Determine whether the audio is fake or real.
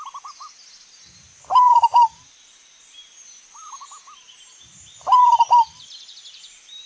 real